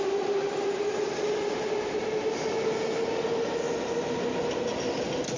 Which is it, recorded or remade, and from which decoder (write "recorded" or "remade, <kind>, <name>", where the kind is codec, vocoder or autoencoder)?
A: recorded